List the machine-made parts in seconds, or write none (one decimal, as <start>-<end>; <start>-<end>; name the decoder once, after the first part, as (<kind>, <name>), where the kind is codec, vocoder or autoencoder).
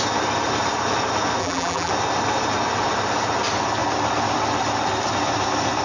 1.4-1.9 (vocoder, BigVGAN v2)